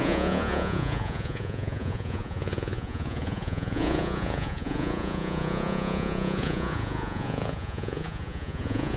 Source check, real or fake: fake